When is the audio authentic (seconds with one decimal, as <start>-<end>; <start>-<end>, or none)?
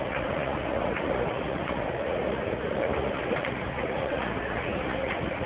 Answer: none